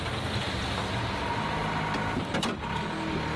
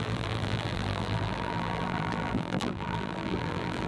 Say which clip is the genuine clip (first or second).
first